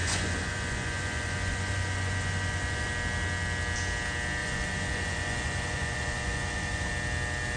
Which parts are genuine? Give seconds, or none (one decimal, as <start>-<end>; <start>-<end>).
2.9-4.4; 6.9-7.6